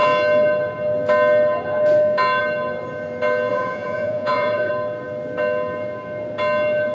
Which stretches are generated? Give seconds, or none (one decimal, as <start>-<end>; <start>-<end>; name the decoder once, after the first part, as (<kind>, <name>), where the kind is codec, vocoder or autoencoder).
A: 3.5-4.7 (vocoder, Vocos)